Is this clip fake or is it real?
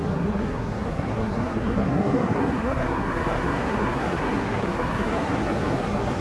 fake